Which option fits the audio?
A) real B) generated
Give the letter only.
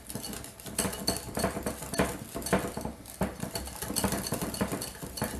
A